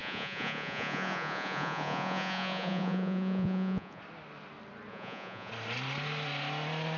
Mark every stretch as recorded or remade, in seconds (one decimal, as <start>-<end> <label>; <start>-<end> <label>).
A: 0.0-4.0 remade; 4.0-4.9 recorded; 4.9-5.5 remade; 5.5-7.0 recorded